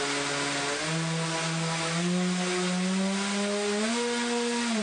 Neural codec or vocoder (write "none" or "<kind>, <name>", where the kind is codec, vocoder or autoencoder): none